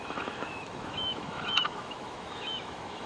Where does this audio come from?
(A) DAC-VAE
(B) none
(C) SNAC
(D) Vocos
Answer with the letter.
A